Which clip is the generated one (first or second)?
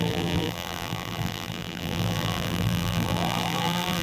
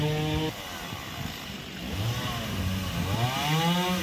first